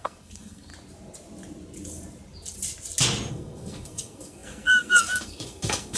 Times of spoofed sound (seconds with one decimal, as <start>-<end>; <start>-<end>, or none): 0.0-0.7; 3.3-6.0